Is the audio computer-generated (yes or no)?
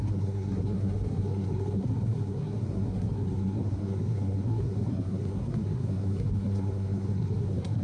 yes